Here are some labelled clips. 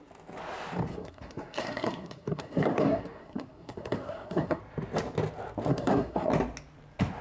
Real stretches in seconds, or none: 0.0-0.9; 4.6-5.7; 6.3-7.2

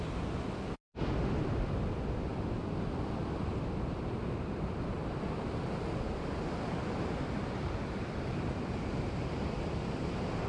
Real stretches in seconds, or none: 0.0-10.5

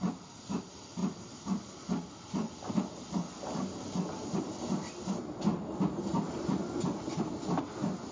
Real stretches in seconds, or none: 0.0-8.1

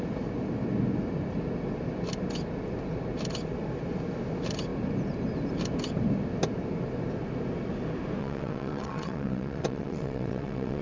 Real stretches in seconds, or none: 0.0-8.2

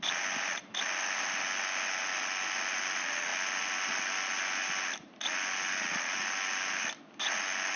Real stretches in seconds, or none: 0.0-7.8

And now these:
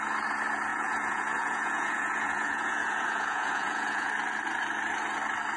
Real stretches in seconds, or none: 0.0-0.7; 4.1-5.6

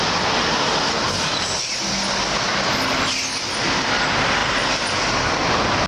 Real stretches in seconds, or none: 0.0-5.9

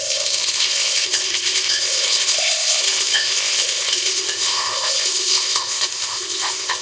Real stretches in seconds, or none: none